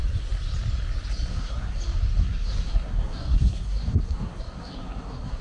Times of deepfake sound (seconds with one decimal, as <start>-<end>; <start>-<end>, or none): 1.3-1.8; 2.2-5.4